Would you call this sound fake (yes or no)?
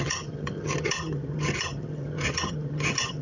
yes